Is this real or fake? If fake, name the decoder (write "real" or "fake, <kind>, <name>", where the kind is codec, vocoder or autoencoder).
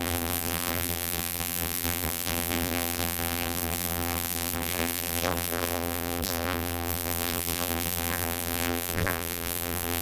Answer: fake, vocoder, BigVGAN v2